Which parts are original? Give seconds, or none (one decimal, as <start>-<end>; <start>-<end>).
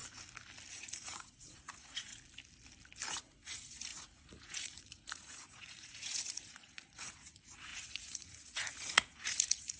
0.0-0.7; 2.1-3.1